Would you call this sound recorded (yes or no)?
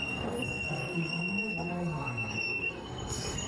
no